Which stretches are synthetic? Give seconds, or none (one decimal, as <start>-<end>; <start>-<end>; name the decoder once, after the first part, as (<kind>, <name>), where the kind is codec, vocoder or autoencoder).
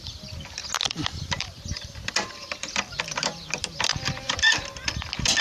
1.1-3.0 (vocoder, BigVGAN v2); 3.9-4.5